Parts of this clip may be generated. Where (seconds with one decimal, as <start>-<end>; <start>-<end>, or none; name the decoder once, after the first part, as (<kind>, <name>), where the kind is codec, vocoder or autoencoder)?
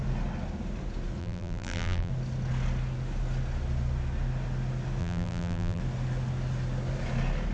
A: 1.2-2.1 (vocoder, BigVGAN v2); 5.0-5.8